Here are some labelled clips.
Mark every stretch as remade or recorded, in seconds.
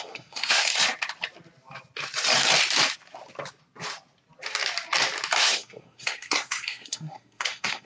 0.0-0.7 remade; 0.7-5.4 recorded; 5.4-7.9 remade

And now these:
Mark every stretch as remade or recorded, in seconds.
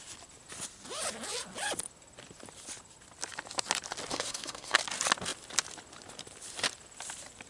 0.0-4.1 recorded; 4.1-4.8 remade; 4.8-7.5 recorded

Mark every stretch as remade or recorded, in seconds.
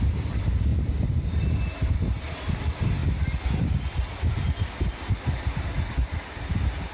0.0-6.9 recorded